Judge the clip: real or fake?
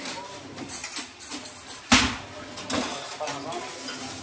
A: real